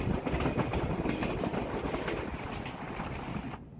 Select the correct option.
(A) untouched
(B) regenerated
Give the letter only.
A